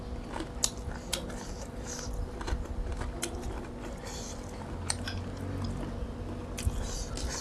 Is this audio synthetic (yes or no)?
no